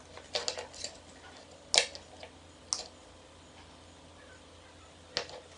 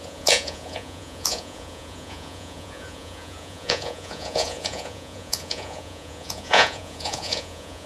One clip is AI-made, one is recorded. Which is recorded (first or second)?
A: first